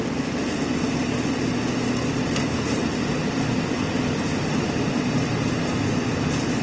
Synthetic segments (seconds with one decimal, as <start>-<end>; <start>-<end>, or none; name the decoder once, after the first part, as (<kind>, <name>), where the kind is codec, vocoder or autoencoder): none